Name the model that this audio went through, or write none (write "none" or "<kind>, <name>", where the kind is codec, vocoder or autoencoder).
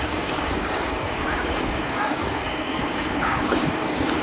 codec, DAC